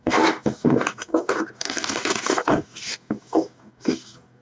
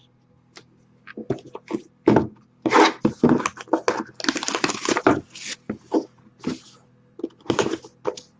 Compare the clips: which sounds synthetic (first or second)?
first